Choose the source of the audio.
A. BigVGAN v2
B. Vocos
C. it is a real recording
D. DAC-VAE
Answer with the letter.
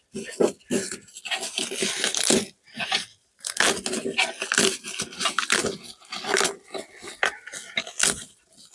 C